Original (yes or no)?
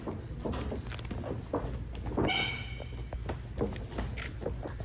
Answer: yes